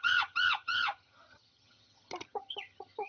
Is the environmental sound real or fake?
fake